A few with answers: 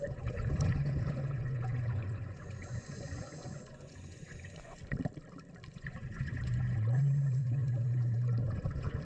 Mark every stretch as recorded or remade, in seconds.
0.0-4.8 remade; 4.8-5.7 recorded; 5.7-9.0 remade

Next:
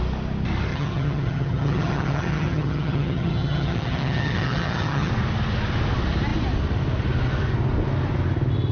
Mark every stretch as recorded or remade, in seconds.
0.0-0.7 recorded; 0.7-5.1 remade; 5.1-8.7 recorded

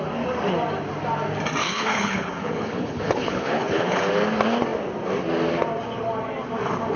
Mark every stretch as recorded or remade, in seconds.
0.0-1.6 recorded; 1.6-4.0 remade; 4.0-7.0 recorded

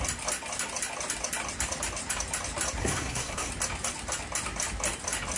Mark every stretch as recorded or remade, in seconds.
0.0-2.8 recorded; 2.8-3.5 remade; 3.5-5.4 recorded

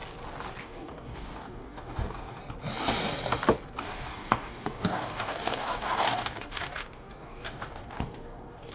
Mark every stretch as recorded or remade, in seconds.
0.0-0.6 recorded; 0.6-2.4 remade; 2.4-3.8 recorded; 3.8-8.7 remade

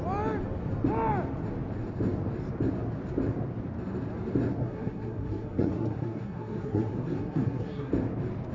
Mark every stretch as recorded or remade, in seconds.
0.0-4.6 recorded; 4.6-7.9 remade; 7.9-8.5 recorded

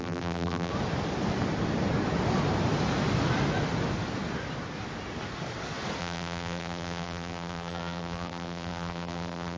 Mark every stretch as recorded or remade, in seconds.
0.0-0.7 remade; 0.7-6.0 recorded; 6.0-9.6 remade

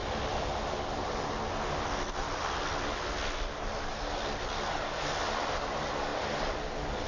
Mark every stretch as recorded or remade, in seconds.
0.0-7.1 recorded